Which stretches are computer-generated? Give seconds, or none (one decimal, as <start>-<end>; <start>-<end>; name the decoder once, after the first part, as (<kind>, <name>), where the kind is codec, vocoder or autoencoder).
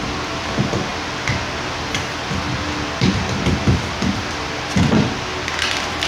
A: none